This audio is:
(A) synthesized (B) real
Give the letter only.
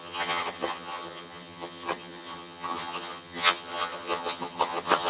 A